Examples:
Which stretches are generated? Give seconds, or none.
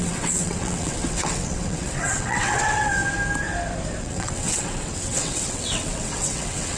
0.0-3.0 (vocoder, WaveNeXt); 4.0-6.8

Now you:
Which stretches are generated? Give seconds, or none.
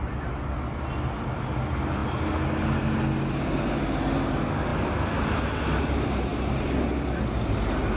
none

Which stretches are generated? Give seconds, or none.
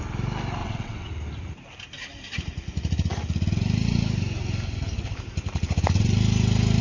0.6-1.1 (vocoder, WaveNeXt)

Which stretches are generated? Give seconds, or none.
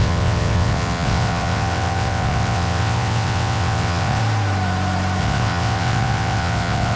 0.0-4.2 (vocoder, WaveNeXt); 5.2-7.0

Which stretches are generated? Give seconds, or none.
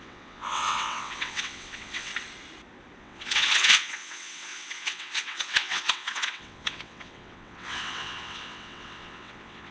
0.0-2.1 (vocoder, WaveNeXt); 3.0-9.7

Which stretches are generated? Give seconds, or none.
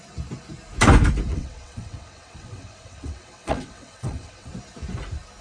1.3-4.5 (vocoder, WaveNeXt)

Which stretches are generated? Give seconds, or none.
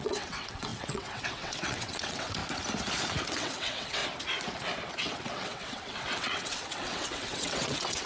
0.0-2.4 (vocoder, WaveNeXt); 3.2-4.0; 5.0-8.1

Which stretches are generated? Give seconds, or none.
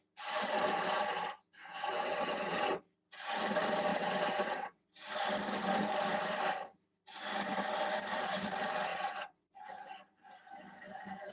1.6-2.8 (vocoder, WaveNeXt); 3.9-4.9; 8.9-9.6